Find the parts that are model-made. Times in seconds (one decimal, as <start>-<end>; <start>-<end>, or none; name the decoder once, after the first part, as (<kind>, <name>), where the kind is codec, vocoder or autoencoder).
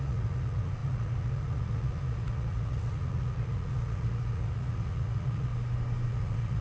0.0-5.5 (vocoder, Vocos); 6.1-6.6